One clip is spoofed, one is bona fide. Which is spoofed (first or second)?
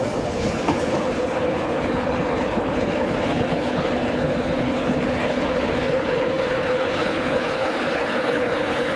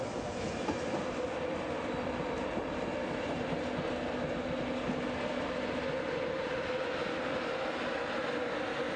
first